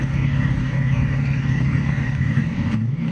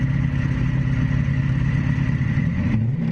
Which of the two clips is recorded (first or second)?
second